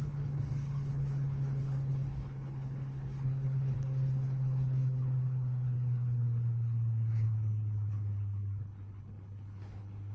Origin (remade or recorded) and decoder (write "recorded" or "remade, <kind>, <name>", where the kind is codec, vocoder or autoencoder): remade, codec, HILCodec